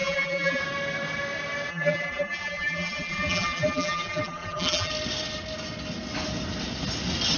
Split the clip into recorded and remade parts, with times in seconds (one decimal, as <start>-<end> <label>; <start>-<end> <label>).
0.0-0.6 remade; 0.6-1.7 recorded; 1.7-4.9 remade; 4.9-7.4 recorded